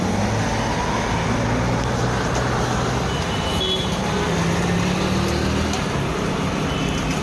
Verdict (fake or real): real